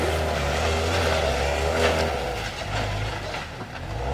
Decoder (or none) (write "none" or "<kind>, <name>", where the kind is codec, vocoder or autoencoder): none